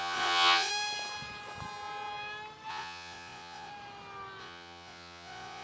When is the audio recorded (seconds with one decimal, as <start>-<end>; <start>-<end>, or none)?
0.7-2.7; 3.7-4.4